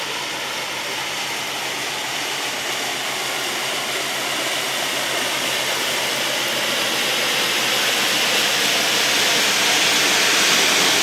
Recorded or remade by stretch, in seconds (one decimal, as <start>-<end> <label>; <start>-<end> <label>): 0.0-1.8 recorded; 1.8-2.6 remade; 2.6-11.0 recorded